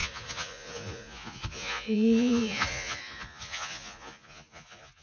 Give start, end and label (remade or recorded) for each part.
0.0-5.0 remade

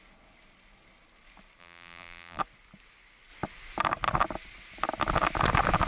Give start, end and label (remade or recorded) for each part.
0.0-1.6 recorded; 1.6-2.4 remade; 2.4-5.9 recorded

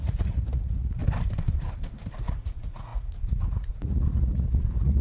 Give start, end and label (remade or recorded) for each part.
0.0-1.0 remade; 1.0-2.1 recorded; 2.1-5.0 remade

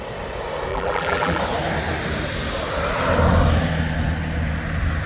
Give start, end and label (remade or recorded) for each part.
0.0-0.7 recorded; 0.7-1.4 remade; 1.4-5.1 recorded

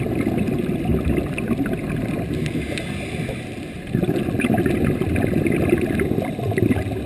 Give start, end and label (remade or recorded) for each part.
0.0-7.1 recorded

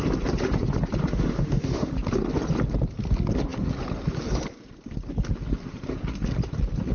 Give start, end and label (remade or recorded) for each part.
0.0-1.1 recorded; 1.1-1.9 remade; 1.9-6.9 recorded

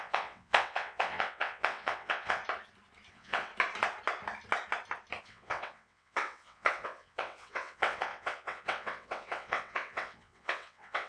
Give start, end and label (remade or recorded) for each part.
0.0-2.4 remade; 2.4-3.1 recorded; 3.1-3.5 remade; 3.5-5.2 recorded; 5.2-11.1 remade